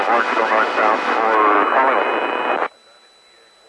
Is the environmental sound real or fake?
real